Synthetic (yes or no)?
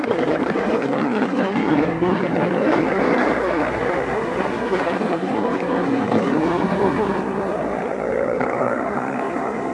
yes